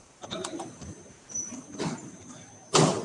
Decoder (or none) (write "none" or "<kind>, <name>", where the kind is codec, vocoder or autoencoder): vocoder, BigVGAN v2